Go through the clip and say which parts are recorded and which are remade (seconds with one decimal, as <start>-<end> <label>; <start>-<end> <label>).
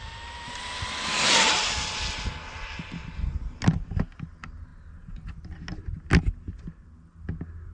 0.0-7.7 recorded